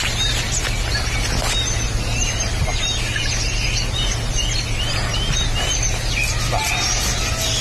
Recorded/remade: recorded